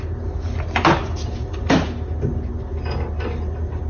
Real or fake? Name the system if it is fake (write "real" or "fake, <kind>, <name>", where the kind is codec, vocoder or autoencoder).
real